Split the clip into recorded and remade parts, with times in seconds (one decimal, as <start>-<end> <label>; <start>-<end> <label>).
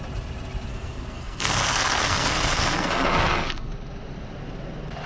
0.0-0.7 recorded; 0.7-3.7 remade; 3.7-5.1 recorded